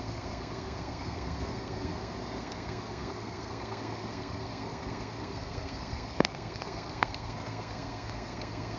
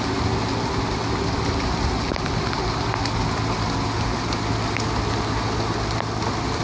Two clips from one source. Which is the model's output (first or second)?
first